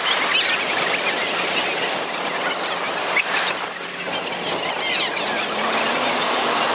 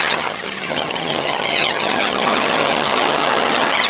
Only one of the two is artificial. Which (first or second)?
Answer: second